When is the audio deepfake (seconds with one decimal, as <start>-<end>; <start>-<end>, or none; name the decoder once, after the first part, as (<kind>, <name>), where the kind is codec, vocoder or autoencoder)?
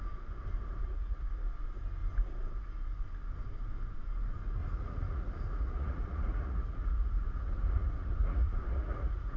0.8-1.3 (vocoder, Vocos); 4.6-9.4